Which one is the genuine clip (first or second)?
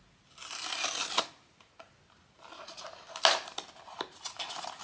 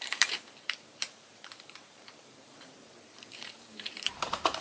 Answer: first